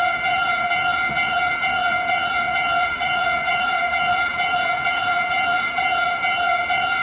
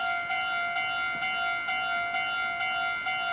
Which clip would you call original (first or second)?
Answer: second